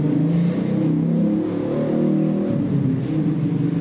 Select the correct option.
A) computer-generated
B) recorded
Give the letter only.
B